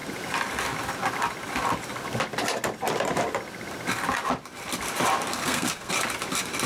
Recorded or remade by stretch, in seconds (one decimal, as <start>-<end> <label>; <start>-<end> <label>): 0.0-5.4 recorded; 5.4-5.9 remade; 5.9-6.7 recorded